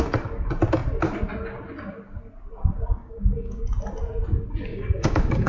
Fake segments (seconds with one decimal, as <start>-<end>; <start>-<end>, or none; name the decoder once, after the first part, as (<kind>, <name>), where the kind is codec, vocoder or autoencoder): 3.0-3.6 (codec, DAC); 4.7-5.5